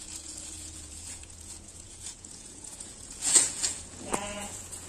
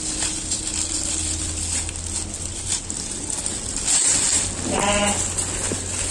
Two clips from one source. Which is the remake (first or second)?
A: first